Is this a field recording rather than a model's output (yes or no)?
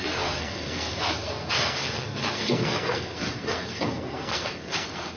no